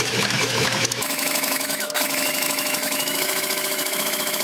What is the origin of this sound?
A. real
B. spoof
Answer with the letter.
B